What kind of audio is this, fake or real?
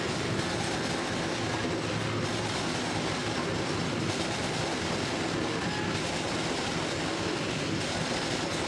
real